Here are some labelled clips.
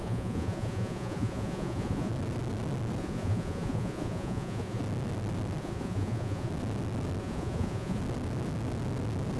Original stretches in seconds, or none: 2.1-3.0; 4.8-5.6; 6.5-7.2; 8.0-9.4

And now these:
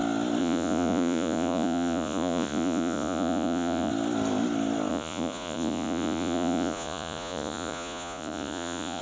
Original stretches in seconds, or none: 0.0-0.4; 3.9-4.9

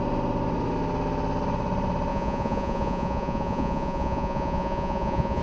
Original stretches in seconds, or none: 0.0-2.1

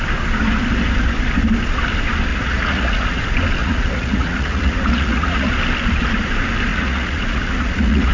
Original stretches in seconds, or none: 0.0-2.3; 3.2-3.6; 5.5-6.7